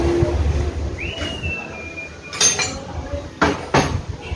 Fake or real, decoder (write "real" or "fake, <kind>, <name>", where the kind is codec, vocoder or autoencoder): real